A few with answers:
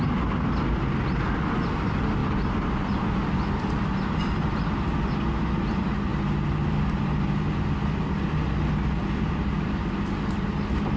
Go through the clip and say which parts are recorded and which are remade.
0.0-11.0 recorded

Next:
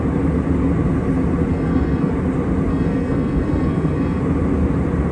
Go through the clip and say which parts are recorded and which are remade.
0.0-1.5 recorded; 1.5-2.1 remade; 2.1-2.7 recorded; 2.7-4.2 remade; 4.2-5.1 recorded

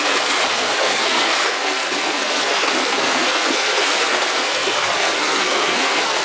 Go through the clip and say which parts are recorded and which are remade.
0.0-6.2 remade

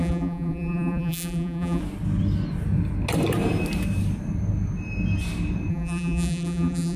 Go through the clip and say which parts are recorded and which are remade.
0.0-1.8 remade; 1.8-5.7 recorded; 5.7-7.0 remade

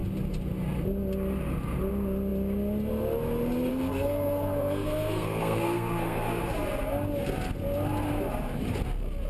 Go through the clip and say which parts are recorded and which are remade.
0.0-3.7 recorded; 3.7-6.4 remade; 6.4-9.3 recorded

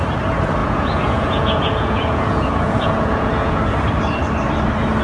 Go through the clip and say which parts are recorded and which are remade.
0.0-0.6 recorded; 0.6-3.6 remade; 3.6-5.0 recorded